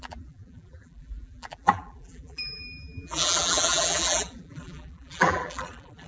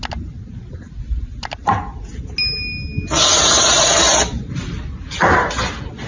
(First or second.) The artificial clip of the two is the first